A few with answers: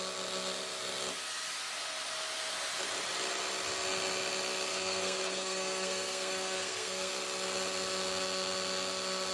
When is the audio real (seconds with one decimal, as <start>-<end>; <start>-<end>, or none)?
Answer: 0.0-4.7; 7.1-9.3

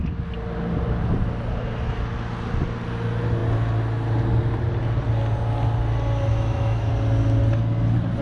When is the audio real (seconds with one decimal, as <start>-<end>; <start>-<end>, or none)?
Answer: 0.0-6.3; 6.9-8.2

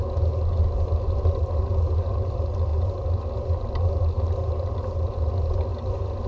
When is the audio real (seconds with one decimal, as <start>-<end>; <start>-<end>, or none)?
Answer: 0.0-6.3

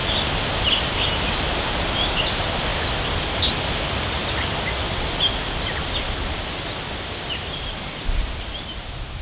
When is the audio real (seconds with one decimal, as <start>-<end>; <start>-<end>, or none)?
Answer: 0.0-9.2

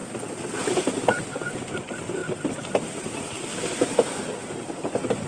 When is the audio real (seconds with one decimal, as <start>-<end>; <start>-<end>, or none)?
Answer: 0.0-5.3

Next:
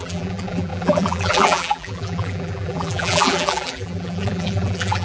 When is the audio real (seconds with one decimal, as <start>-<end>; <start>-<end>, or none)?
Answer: none